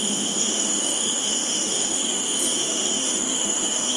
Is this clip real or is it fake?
fake